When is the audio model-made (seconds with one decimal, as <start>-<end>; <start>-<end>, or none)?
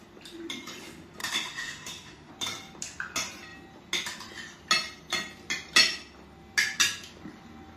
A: 1.2-2.3